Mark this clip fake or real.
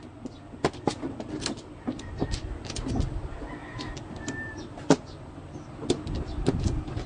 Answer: real